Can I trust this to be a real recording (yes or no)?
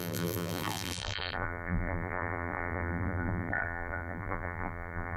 no